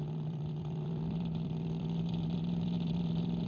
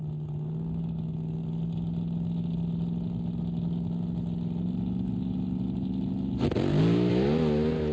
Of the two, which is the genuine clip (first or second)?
second